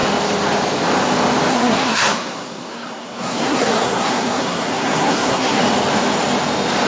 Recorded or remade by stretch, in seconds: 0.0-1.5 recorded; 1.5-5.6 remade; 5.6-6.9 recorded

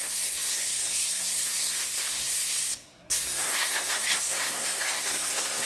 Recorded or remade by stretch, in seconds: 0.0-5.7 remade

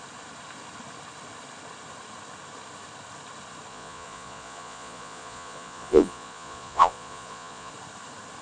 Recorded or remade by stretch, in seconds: 0.0-3.7 recorded; 3.7-7.7 remade; 7.7-8.4 recorded

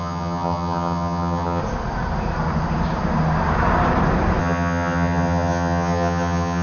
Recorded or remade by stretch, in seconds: 0.0-1.6 remade; 1.6-4.4 recorded; 4.4-6.6 remade

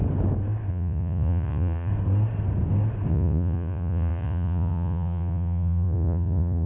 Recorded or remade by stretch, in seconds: 0.0-0.7 recorded; 0.7-1.9 remade; 1.9-3.1 recorded; 3.1-6.7 remade

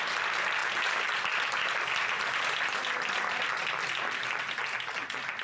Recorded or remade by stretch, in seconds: 0.0-5.4 recorded